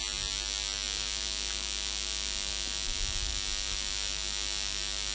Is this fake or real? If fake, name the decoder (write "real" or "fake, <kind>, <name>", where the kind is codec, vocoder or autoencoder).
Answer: real